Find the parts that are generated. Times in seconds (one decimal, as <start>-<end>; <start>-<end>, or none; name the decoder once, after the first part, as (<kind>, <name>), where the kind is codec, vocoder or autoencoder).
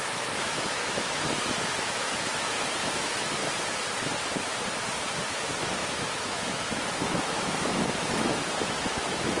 0.0-3.4 (autoencoder, DAC-VAE); 5.3-9.4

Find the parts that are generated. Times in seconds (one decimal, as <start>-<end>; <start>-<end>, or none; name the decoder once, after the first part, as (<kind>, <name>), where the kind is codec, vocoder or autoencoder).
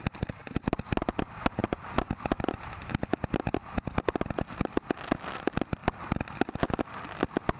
none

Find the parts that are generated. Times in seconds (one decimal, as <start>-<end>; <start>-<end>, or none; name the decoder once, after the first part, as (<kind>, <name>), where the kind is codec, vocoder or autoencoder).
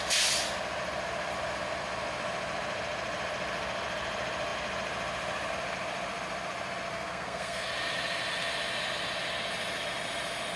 6.9-7.7 (codec, SNAC)